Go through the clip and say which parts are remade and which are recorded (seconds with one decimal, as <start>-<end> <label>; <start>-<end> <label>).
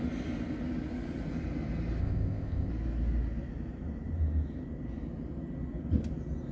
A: 0.0-2.0 recorded; 2.0-2.7 remade; 2.7-6.5 recorded